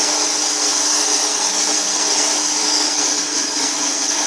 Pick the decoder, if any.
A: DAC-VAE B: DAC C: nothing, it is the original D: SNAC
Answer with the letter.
D